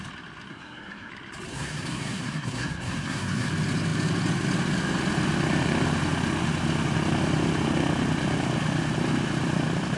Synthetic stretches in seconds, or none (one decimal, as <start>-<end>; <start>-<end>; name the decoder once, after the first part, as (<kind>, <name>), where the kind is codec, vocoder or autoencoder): 0.5-1.1 (codec, SNAC); 1.5-3.5